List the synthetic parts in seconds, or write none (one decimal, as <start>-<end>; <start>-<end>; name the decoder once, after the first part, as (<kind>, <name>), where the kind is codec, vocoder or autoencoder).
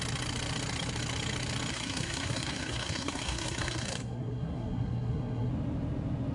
1.7-5.5 (codec, SNAC)